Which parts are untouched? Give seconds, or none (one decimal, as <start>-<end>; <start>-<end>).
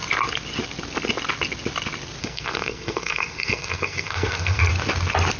0.0-2.2; 4.7-5.4